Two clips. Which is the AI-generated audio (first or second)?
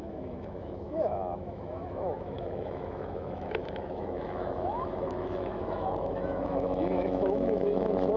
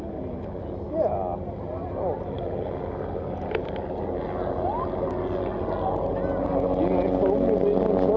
first